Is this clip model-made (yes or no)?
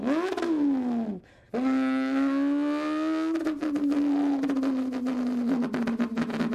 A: no